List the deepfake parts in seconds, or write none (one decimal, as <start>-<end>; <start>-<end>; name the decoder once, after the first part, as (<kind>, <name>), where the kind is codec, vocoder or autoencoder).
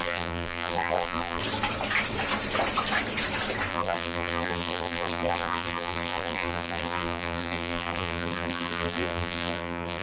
0.0-1.4 (vocoder, BigVGAN v2); 3.7-10.0